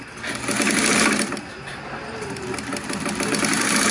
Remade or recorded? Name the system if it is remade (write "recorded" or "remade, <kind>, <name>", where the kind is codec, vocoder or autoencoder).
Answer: recorded